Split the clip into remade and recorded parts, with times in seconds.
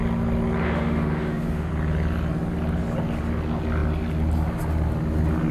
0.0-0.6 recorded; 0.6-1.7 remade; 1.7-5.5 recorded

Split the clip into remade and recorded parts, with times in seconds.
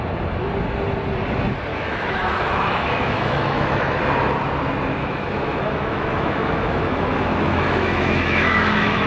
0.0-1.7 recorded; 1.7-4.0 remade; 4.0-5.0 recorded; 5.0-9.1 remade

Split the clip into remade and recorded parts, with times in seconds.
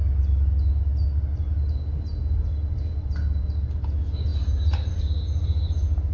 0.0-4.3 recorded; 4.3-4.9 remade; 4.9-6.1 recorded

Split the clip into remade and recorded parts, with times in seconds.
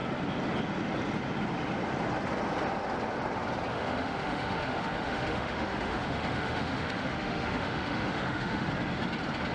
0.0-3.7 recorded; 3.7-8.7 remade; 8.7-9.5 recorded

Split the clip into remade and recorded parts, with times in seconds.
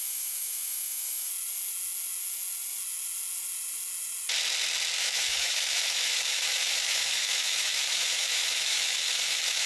0.0-1.3 remade; 1.3-5.0 recorded; 5.0-9.7 remade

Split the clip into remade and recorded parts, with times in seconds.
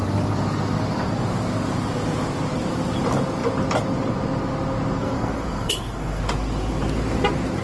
0.0-5.0 recorded; 5.0-6.2 remade; 6.2-7.6 recorded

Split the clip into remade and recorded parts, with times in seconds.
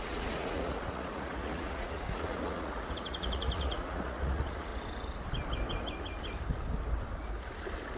0.0-4.7 remade; 4.7-8.0 recorded